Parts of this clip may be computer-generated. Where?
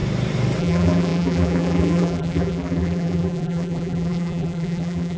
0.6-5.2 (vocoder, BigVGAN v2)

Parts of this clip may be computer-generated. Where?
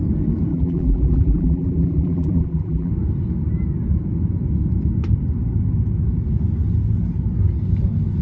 0.5-2.9 (vocoder, BigVGAN v2)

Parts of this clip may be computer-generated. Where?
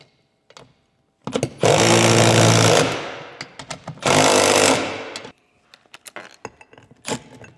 none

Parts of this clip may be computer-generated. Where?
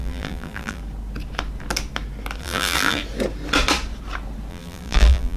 0.0-0.8 (vocoder, BigVGAN v2); 2.4-3.0; 4.5-5.4